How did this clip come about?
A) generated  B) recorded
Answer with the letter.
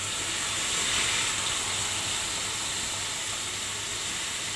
B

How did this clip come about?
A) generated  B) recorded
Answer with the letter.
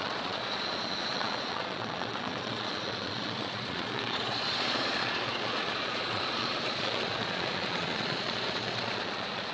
A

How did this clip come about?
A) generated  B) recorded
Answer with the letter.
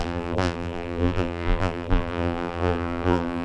A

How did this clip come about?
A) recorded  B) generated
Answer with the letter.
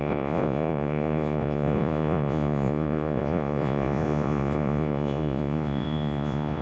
B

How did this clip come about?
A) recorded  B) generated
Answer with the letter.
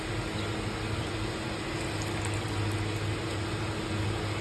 A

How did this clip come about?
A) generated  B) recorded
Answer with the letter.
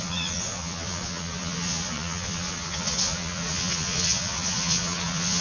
A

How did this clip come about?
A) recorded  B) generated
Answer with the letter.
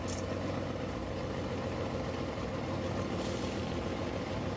A